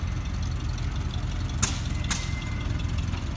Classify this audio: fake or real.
real